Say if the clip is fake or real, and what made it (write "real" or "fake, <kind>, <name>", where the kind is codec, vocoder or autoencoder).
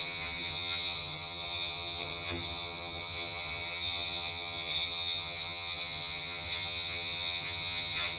fake, vocoder, HiFi-GAN